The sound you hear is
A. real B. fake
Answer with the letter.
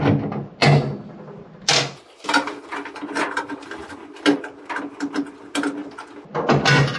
A